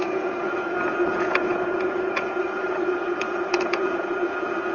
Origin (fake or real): fake